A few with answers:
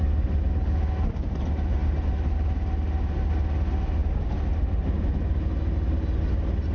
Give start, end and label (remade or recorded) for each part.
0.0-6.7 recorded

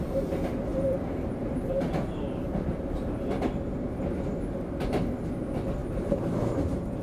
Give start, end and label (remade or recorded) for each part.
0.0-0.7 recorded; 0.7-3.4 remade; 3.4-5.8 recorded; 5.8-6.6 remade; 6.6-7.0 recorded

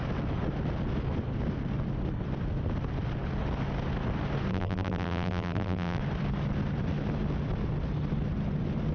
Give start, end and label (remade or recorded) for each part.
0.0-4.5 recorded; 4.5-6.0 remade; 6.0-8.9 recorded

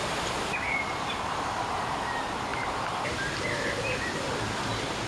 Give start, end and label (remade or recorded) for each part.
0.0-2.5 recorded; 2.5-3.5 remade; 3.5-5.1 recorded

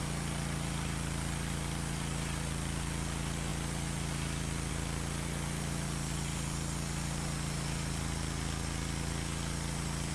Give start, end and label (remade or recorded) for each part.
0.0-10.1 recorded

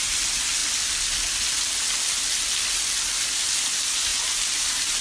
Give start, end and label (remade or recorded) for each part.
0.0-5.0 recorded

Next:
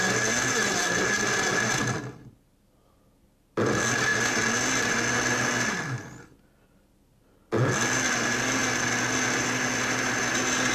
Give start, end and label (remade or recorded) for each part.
0.0-10.7 recorded

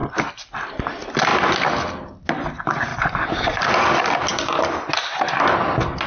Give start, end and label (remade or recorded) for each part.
0.0-2.9 recorded; 2.9-3.7 remade; 3.7-4.3 recorded; 4.3-4.9 remade; 4.9-6.1 recorded